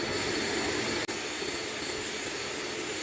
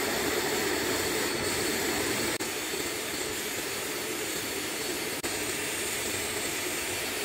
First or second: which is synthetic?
second